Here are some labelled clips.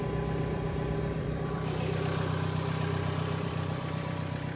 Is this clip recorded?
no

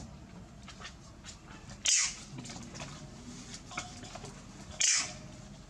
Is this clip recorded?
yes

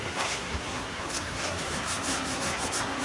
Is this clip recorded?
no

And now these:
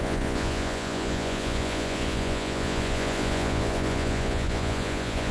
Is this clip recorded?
no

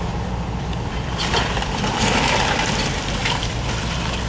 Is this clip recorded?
no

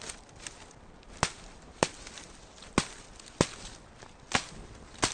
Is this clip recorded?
yes